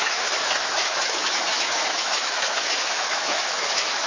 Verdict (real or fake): fake